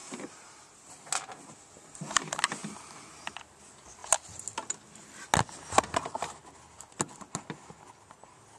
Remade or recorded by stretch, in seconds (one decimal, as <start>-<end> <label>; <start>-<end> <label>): 0.0-0.9 remade; 0.9-8.6 recorded